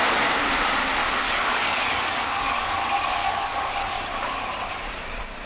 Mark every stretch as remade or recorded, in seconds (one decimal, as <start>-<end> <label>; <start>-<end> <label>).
0.0-1.0 recorded; 1.0-2.7 remade; 2.7-3.2 recorded; 3.2-4.0 remade; 4.0-5.5 recorded